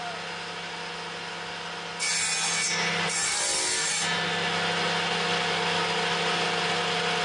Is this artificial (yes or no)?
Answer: no